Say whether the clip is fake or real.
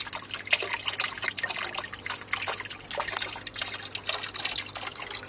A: real